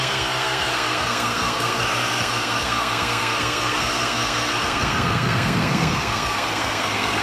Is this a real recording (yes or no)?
no